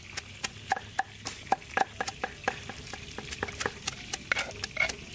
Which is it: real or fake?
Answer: real